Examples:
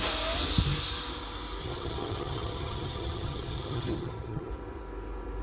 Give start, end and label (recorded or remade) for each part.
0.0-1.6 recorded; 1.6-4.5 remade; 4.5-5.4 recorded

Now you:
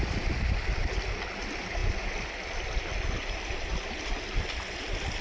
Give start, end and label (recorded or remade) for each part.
0.0-5.2 recorded

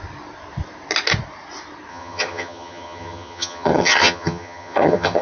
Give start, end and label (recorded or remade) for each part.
0.0-1.9 recorded; 1.9-5.2 remade